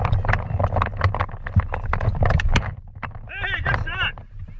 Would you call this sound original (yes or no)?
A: yes